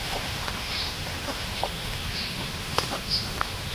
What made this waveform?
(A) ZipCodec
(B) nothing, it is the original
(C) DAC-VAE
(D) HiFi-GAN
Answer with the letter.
C